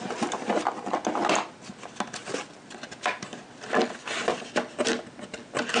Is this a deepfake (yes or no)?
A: no